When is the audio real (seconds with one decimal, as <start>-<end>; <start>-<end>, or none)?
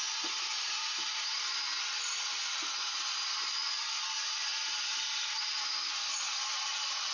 0.0-7.1